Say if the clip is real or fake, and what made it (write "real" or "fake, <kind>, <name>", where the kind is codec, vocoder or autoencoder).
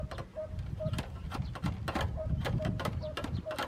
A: real